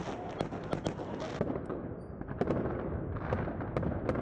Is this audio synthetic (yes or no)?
no